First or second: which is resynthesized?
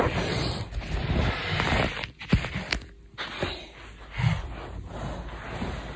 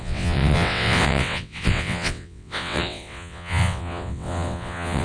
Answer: second